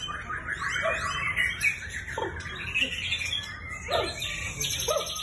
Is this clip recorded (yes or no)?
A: yes